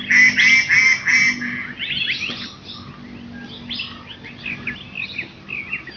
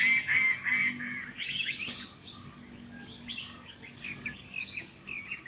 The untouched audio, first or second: first